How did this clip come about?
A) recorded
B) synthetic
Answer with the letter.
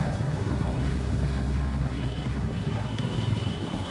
B